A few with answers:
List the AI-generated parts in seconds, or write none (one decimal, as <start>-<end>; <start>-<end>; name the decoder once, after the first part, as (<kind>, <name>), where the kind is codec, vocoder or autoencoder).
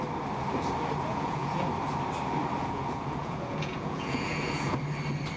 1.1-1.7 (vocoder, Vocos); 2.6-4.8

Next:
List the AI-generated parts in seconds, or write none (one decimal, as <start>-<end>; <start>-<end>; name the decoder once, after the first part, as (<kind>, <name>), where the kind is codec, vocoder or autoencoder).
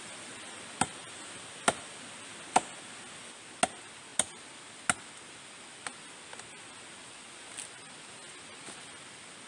7.0-7.5 (vocoder, Vocos)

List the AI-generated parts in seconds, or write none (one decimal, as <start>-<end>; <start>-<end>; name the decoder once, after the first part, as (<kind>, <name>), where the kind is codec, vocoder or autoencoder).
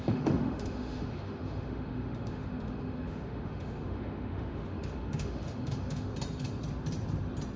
0.0-6.1 (autoencoder, DAC-VAE)